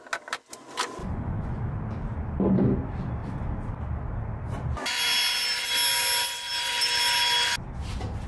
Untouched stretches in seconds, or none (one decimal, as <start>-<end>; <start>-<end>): 0.0-1.0; 1.6-8.3